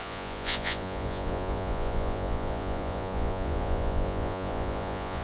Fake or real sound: fake